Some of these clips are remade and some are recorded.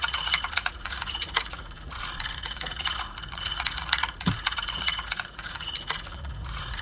remade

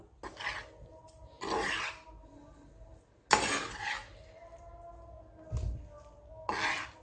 recorded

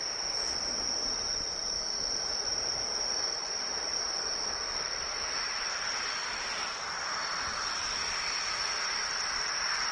recorded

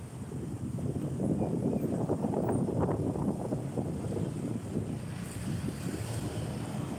recorded